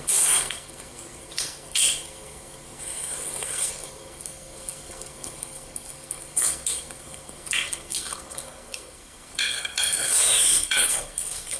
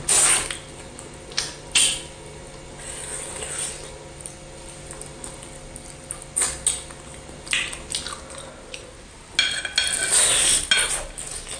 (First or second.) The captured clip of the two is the second